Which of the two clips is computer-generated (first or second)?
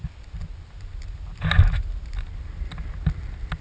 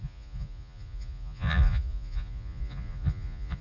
second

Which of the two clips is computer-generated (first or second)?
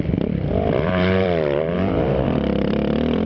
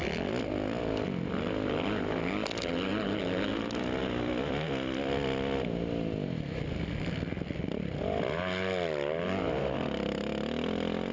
first